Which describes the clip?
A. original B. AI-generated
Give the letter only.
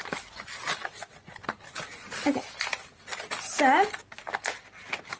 A